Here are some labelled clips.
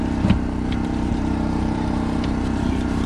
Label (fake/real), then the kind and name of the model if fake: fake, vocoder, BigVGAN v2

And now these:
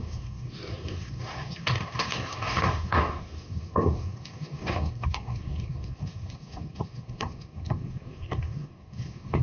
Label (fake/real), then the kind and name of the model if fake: fake, codec, SNAC